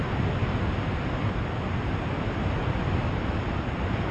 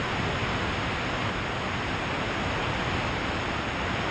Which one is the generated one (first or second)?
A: first